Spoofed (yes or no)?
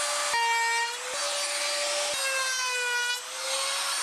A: no